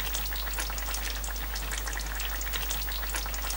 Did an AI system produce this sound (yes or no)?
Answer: no